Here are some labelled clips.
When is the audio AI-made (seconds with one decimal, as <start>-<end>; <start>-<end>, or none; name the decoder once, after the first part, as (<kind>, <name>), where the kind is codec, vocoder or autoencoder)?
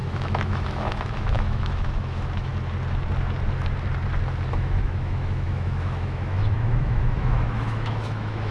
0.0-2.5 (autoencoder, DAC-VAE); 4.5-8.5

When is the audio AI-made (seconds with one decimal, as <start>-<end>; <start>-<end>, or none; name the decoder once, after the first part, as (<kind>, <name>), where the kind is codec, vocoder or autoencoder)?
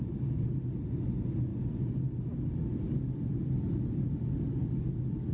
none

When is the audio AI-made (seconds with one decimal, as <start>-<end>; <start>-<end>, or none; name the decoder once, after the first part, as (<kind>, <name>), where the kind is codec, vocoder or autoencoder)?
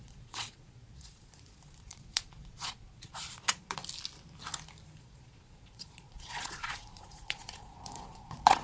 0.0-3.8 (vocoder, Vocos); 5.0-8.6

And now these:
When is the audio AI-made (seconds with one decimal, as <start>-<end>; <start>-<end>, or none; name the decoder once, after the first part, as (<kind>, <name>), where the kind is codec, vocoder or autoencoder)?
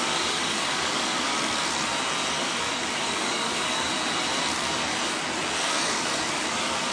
0.0-1.3 (codec, DAC); 2.4-3.9; 5.6-6.9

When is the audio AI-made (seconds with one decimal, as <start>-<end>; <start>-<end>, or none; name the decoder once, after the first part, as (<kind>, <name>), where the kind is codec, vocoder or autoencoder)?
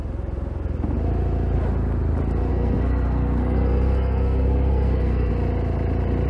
2.5-5.3 (codec, SNAC)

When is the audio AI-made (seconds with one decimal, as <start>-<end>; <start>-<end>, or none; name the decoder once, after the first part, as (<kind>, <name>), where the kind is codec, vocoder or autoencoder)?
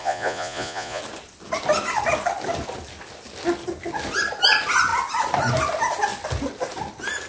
0.0-1.0 (vocoder, Vocos)